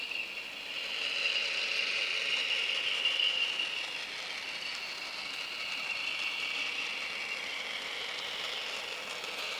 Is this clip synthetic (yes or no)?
no